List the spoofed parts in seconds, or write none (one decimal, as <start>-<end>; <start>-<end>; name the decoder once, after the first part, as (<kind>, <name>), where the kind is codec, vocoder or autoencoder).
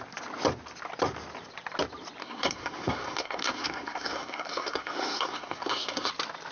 2.2-6.1 (codec, SNAC)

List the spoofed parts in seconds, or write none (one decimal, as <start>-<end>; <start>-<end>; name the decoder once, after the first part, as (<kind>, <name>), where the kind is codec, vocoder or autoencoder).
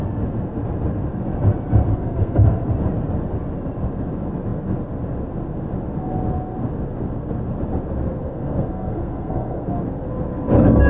1.9-2.6 (codec, SNAC); 8.3-9.7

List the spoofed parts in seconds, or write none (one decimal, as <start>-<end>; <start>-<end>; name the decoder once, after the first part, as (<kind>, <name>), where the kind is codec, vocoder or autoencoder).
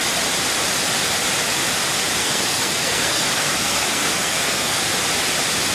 2.2-4.8 (codec, SNAC)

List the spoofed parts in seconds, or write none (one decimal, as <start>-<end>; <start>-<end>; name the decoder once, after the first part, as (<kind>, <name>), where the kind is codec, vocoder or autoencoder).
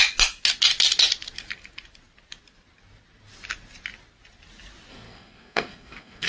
4.9-6.3 (codec, SNAC)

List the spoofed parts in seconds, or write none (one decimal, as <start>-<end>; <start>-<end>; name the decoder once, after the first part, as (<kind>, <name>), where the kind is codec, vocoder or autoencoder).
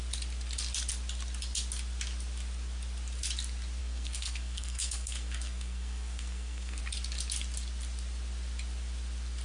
3.8-6.8 (codec, SNAC)